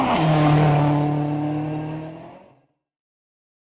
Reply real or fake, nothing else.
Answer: real